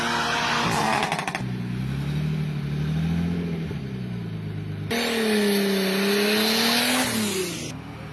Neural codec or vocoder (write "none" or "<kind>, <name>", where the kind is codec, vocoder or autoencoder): none